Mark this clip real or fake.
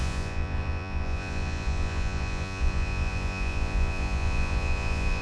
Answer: fake